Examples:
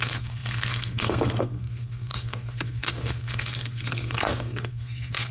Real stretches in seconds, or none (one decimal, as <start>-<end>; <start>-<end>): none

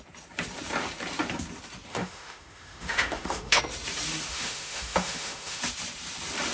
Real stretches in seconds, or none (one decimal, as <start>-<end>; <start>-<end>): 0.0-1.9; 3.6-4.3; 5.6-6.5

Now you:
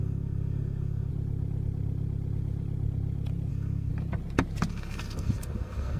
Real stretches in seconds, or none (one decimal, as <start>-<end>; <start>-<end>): 1.1-3.5; 3.9-4.7